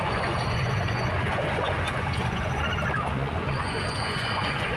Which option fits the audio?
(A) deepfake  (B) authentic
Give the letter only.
A